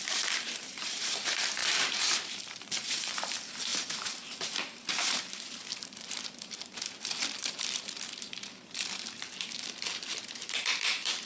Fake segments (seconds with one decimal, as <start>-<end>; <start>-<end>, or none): 0.0-11.3